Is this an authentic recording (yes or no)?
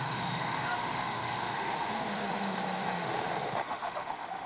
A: no